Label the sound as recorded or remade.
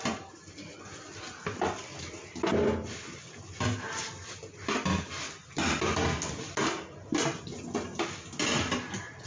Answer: recorded